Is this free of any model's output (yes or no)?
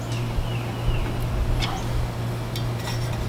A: yes